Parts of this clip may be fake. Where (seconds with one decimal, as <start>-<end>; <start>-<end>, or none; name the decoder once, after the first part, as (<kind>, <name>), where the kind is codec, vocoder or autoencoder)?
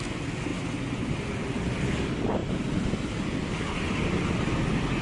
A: none